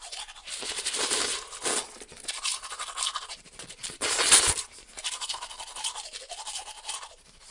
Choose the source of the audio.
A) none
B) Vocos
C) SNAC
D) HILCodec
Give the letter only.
A